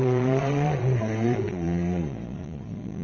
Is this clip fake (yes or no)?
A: yes